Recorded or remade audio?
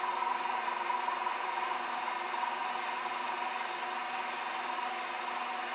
recorded